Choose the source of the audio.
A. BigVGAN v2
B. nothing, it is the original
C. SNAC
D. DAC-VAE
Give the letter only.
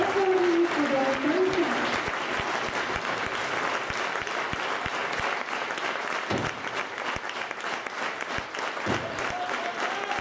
B